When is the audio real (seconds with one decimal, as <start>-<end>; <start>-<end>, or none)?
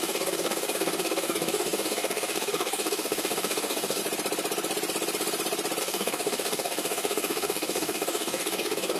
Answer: 4.0-5.8